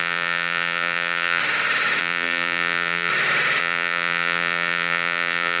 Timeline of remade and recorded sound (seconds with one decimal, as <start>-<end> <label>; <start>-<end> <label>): 0.0-1.4 remade; 1.4-2.0 recorded; 2.0-3.1 remade; 3.1-3.6 recorded; 3.6-5.6 remade